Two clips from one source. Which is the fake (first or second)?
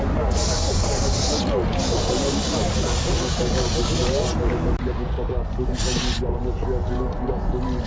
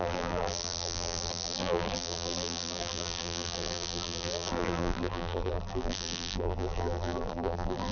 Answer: second